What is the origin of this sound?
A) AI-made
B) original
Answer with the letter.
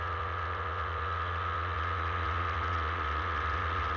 A